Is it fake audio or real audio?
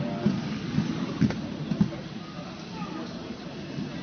real